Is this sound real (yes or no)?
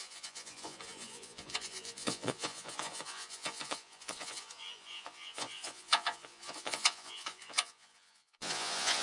no